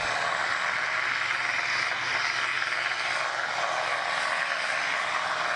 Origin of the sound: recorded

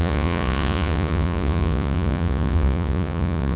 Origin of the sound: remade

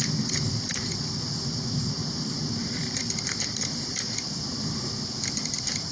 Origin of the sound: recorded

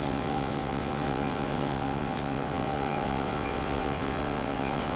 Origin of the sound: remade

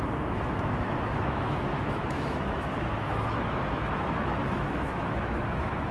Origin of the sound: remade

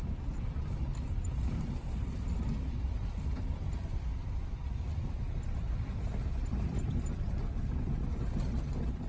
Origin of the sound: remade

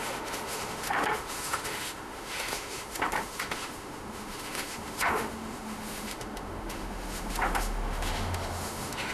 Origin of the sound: remade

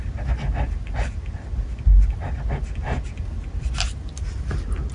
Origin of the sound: recorded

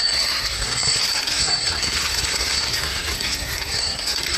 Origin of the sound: remade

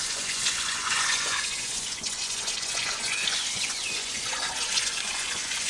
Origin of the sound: remade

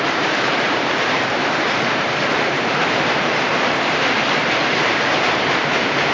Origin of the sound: remade